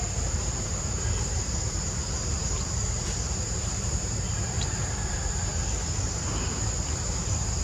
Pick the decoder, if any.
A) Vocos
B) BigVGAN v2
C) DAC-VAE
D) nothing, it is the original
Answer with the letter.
B